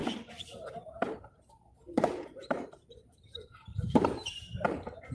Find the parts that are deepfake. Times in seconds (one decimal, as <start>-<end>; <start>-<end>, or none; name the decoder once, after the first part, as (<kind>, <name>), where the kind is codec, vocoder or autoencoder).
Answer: 0.0-3.7 (vocoder, BigVGAN v2); 4.3-5.1